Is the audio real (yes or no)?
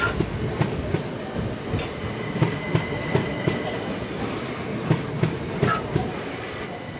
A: yes